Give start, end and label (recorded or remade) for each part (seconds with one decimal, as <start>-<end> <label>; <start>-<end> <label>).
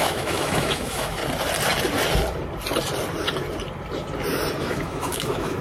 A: 0.0-1.2 remade; 1.2-4.6 recorded; 4.6-5.6 remade